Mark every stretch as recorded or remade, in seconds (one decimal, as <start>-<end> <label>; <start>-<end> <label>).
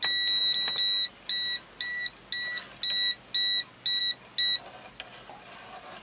0.0-6.0 recorded